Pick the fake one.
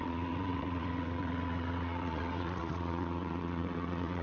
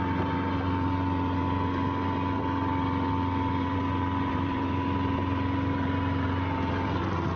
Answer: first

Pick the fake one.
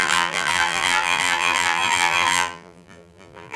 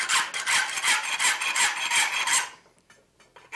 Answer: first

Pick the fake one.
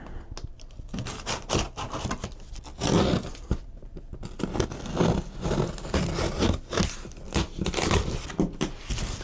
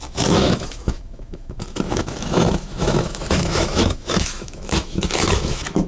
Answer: second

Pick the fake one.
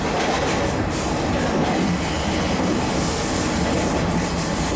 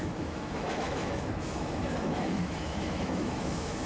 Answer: second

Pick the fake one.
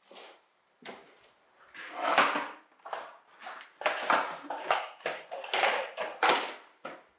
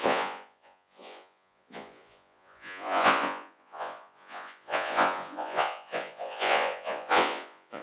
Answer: second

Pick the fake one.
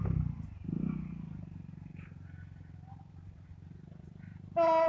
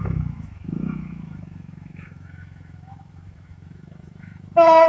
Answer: second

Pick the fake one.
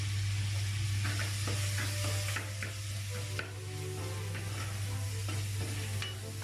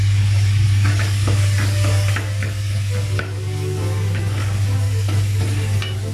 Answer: second